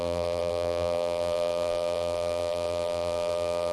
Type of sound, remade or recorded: remade